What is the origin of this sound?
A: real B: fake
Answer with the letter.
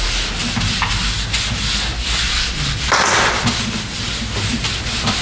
A